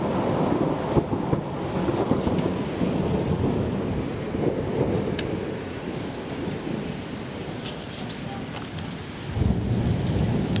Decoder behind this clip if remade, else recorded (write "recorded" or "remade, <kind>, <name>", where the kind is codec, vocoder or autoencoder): recorded